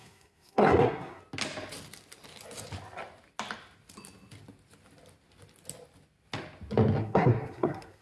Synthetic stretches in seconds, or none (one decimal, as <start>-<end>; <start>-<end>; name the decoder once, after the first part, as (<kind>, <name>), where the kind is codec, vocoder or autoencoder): 0.0-1.2 (codec, SNAC); 7.0-8.0